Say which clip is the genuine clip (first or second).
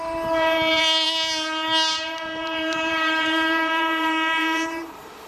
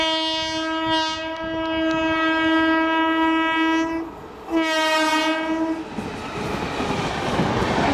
second